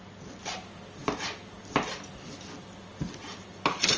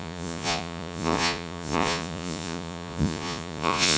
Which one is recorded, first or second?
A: first